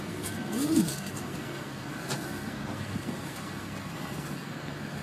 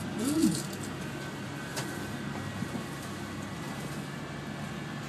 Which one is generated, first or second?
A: first